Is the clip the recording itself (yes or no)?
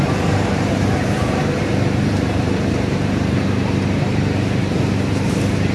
no